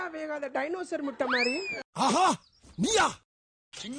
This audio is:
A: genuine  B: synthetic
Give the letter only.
A